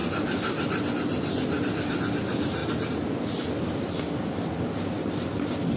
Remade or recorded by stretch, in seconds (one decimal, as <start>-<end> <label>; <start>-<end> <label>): 0.0-5.8 recorded

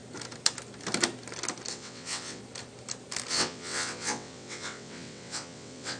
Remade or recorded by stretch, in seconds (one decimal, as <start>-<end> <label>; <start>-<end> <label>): 0.0-1.7 recorded; 1.7-2.4 remade; 2.4-3.3 recorded; 3.3-6.0 remade

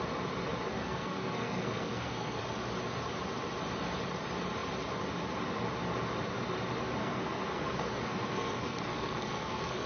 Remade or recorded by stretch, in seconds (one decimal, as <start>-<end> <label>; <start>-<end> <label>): 0.0-0.8 recorded; 0.8-2.4 remade; 2.4-7.0 recorded; 7.0-9.9 remade

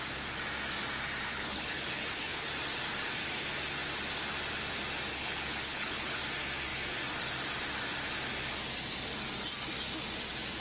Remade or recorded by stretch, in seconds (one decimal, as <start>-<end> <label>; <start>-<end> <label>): 0.0-1.3 recorded; 1.3-2.5 remade; 2.5-5.1 recorded; 5.1-6.2 remade; 6.2-10.6 recorded

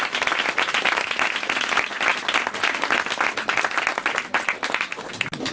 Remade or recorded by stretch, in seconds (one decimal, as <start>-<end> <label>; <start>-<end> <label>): 0.0-5.5 recorded

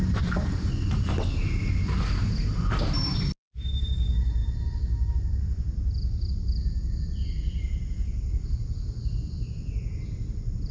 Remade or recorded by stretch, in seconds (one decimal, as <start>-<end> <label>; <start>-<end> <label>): 0.0-10.7 recorded